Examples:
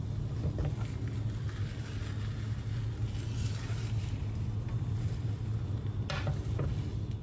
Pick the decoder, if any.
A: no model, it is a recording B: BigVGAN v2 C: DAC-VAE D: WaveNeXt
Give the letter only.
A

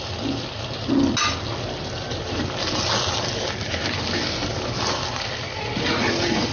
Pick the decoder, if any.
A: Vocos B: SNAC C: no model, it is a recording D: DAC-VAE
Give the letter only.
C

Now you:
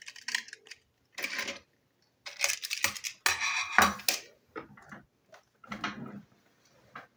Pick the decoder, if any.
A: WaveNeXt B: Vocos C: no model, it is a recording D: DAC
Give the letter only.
C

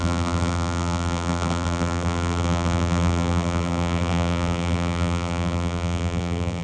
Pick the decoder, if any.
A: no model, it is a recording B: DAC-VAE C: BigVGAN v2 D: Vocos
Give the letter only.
C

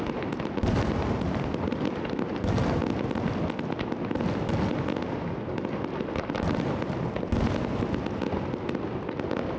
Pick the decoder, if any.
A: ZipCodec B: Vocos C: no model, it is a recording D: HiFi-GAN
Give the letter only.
C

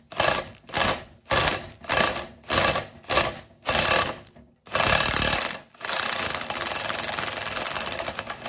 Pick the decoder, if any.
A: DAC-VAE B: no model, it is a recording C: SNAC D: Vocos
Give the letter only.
B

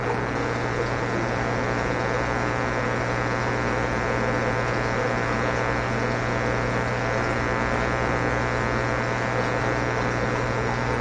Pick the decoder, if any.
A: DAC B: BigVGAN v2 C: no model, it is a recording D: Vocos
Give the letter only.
C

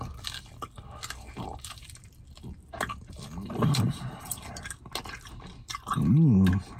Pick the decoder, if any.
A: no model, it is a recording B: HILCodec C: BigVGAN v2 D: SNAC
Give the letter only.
A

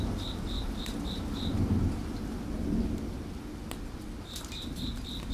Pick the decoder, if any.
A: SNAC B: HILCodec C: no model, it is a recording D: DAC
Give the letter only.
C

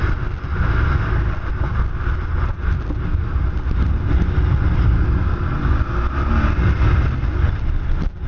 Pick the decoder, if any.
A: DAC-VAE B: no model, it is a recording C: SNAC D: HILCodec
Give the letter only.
B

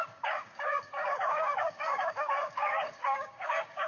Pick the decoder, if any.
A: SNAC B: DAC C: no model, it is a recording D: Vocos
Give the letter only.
B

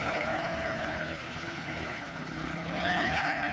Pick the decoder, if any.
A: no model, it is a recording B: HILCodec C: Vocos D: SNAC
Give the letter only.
B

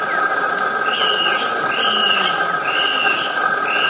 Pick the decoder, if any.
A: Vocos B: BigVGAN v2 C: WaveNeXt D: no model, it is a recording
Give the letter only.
D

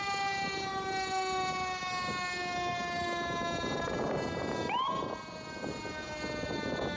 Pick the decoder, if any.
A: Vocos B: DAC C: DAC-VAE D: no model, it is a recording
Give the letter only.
D